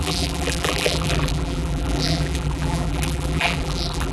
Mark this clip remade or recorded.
remade